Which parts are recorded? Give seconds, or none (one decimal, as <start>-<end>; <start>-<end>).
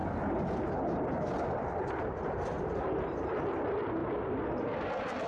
0.0-5.3